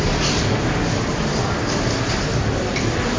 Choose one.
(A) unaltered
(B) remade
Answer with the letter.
A